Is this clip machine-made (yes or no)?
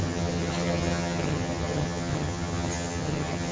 yes